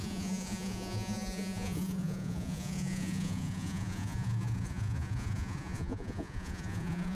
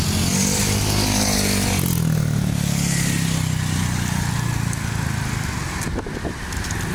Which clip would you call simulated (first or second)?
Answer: first